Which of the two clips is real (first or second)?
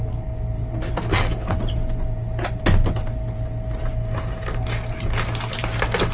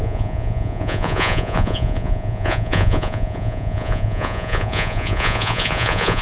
first